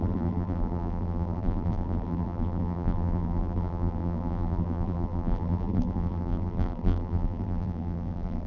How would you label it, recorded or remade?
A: remade